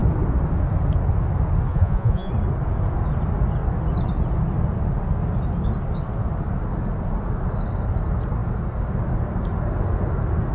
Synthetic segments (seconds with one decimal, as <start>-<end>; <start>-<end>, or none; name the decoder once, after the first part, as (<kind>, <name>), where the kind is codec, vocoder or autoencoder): 1.7-2.3 (vocoder, Vocos)